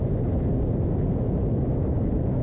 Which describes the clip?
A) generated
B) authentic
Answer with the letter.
B